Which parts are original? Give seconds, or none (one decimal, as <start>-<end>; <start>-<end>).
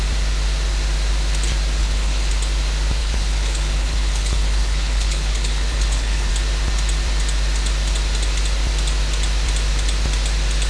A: 0.0-1.8; 2.3-3.0; 6.3-10.7